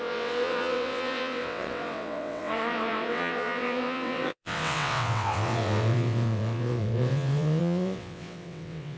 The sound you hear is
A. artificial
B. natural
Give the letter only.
A